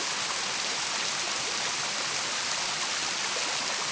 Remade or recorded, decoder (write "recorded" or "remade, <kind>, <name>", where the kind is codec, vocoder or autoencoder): recorded